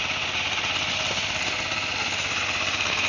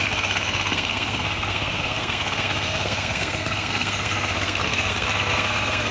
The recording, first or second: first